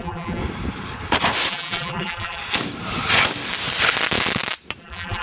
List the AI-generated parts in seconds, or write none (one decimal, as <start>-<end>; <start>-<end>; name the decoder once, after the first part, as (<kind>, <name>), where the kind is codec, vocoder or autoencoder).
0.0-0.4 (vocoder, BigVGAN v2); 1.5-2.4; 4.8-5.2